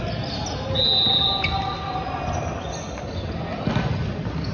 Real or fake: real